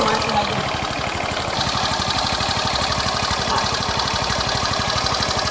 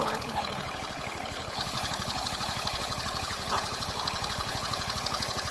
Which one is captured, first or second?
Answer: first